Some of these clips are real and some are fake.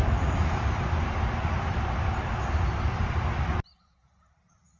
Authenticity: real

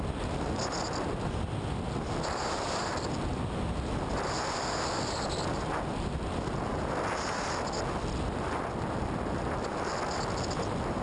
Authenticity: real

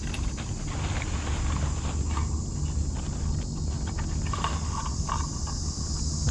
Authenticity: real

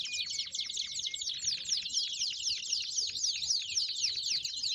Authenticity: real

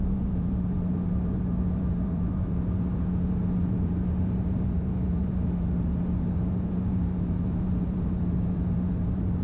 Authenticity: fake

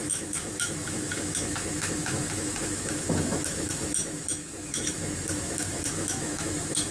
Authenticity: fake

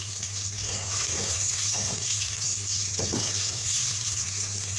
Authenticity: fake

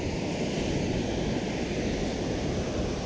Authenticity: real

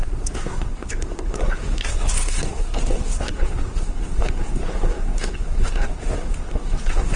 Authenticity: fake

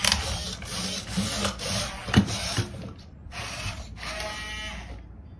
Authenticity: real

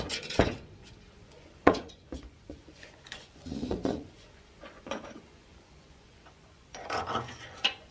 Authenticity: fake